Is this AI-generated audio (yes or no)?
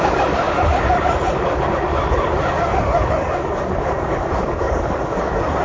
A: yes